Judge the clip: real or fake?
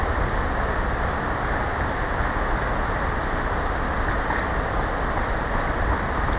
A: real